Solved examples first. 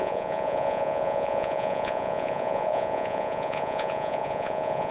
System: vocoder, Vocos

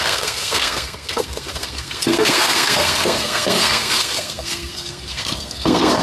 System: codec, SNAC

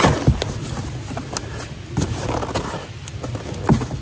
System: none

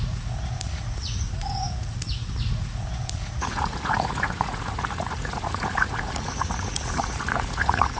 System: vocoder, Vocos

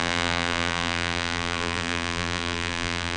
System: vocoder, BigVGAN v2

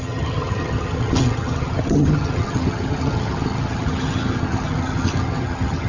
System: vocoder, HiFi-GAN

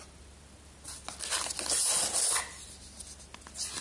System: none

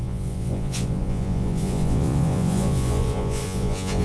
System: vocoder, Vocos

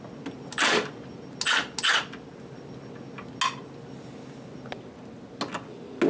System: none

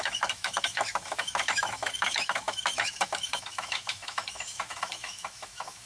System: autoencoder, DAC-VAE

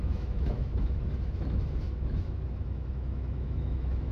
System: autoencoder, DAC-VAE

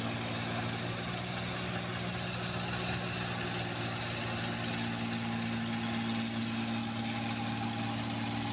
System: none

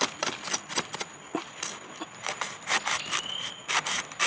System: vocoder, BigVGAN v2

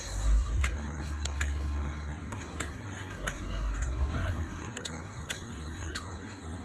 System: codec, SNAC